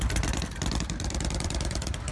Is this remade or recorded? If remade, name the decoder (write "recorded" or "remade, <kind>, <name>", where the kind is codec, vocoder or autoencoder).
remade, vocoder, BigVGAN v2